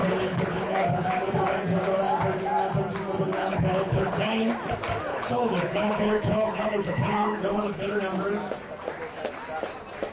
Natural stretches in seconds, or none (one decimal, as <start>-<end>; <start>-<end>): 1.1-3.4; 4.5-5.1; 8.0-10.1

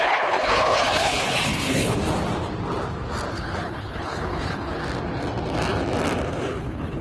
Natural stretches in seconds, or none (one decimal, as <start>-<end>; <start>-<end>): 2.0-3.3; 4.8-6.3